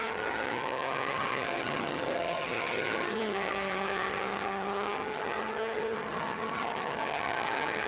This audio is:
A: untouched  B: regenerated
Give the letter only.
B